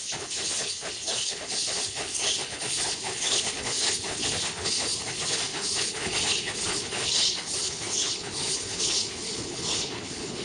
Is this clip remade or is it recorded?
remade